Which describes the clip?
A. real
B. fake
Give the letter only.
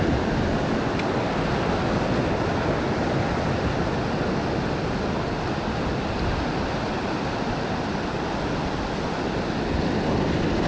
A